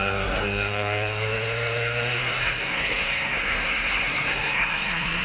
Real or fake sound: fake